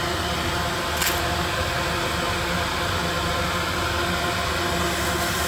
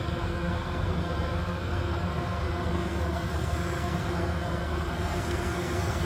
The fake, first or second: second